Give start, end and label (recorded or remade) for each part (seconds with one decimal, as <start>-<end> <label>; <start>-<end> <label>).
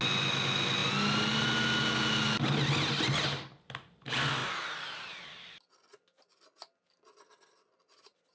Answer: 0.0-4.4 recorded; 4.4-8.3 remade